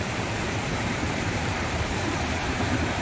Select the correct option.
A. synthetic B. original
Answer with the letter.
A